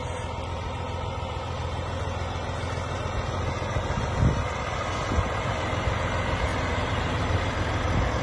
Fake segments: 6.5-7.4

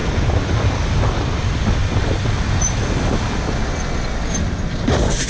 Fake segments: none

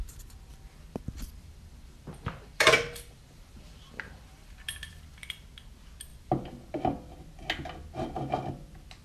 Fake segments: 0.5-5.5; 6.1-6.8

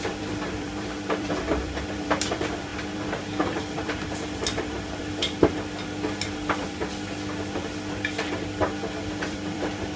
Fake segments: 0.0-5.2; 9.1-10.0

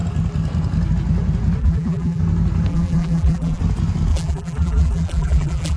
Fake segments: 1.6-2.2; 2.7-3.6; 4.1-5.8

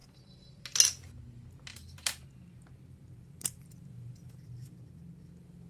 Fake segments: 0.0-0.6; 1.7-5.1

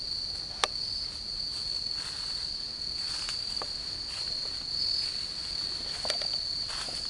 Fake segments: none